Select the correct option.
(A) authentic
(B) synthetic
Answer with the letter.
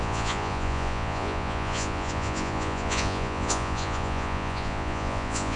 B